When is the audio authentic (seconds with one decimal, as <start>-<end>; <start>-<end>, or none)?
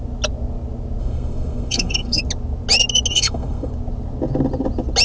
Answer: 0.0-1.0; 2.2-3.1; 3.7-5.0